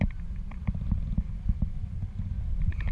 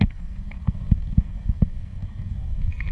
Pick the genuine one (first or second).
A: first